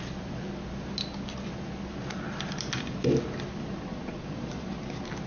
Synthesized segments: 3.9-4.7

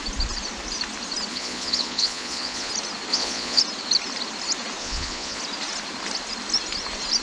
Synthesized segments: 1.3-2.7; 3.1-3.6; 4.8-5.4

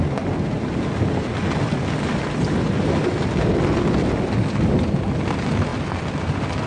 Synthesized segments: none

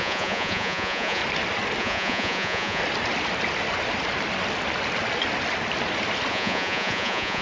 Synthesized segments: 0.0-1.2; 1.8-2.8; 6.3-7.4

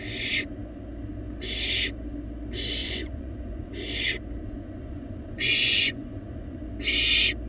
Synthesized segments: 2.8-3.7; 4.4-6.6